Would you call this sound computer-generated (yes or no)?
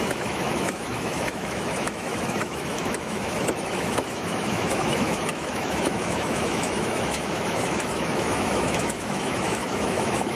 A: yes